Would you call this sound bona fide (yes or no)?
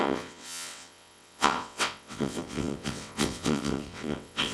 no